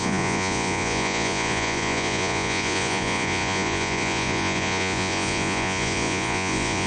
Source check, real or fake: fake